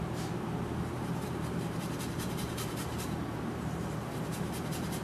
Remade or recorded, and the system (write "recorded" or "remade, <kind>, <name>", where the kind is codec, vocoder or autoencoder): remade, vocoder, BigVGAN v2